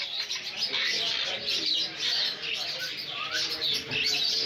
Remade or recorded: recorded